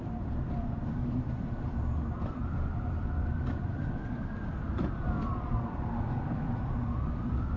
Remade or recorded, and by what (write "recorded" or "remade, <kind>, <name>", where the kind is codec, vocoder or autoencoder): remade, vocoder, BigVGAN v2